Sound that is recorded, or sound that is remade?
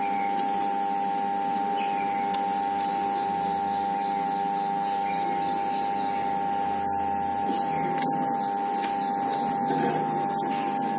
recorded